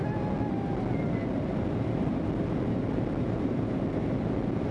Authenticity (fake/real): real